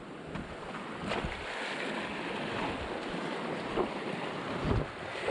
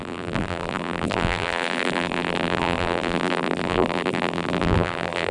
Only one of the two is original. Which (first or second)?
first